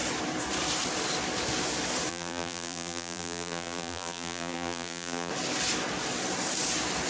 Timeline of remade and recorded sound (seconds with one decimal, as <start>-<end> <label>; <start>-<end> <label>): 0.0-2.1 recorded; 2.1-5.3 remade; 5.3-7.1 recorded